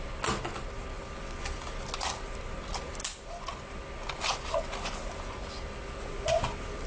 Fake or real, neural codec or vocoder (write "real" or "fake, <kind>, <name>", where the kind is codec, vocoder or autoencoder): real